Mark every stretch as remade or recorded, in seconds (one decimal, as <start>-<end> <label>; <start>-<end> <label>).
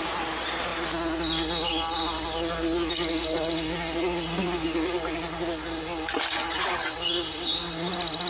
0.0-8.3 recorded